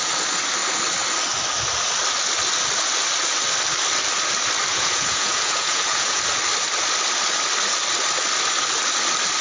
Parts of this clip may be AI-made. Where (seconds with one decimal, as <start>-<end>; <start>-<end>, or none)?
4.7-6.2